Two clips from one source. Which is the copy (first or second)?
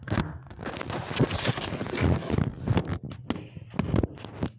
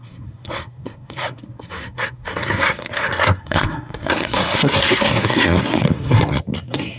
second